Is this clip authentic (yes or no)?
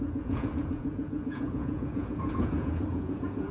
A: no